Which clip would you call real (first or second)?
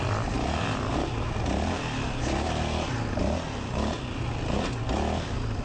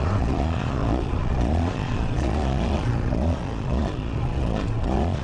first